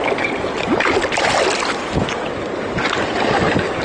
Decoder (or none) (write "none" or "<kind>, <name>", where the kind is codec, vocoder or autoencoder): none